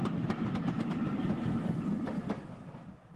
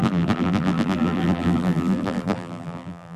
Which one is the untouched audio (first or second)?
first